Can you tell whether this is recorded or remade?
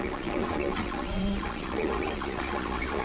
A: remade